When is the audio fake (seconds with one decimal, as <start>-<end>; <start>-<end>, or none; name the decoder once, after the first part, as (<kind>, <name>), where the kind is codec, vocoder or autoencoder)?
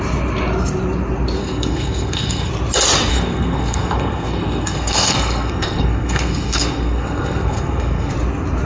1.4-2.5 (codec, SNAC); 3.1-8.1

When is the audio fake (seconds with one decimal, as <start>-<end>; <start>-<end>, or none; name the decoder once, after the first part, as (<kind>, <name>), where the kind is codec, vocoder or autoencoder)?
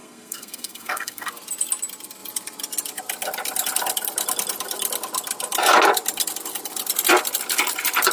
0.0-1.3 (codec, SNAC)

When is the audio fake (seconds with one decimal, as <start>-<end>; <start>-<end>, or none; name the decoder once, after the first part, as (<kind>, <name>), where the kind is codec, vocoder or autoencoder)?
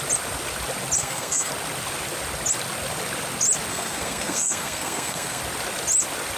1.0-1.5 (codec, SNAC); 3.7-5.4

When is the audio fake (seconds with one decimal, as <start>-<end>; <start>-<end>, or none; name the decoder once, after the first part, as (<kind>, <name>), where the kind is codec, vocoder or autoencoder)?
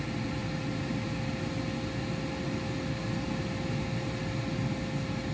none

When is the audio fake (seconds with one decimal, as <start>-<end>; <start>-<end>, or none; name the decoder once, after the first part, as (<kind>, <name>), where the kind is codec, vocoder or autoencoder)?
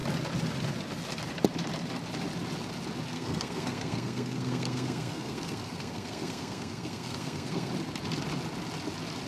3.1-7.7 (codec, SNAC)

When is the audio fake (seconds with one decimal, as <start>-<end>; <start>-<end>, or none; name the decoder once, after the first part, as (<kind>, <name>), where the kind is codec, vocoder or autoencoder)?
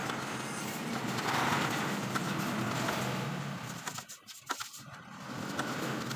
none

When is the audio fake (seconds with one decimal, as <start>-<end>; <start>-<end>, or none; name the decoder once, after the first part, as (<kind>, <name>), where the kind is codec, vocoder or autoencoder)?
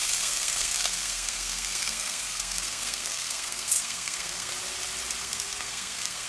0.0-4.5 (codec, SNAC); 5.2-6.3